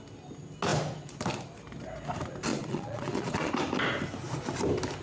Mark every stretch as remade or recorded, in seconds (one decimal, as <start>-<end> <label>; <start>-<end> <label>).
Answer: 0.0-2.5 recorded; 2.5-3.5 remade; 3.5-5.0 recorded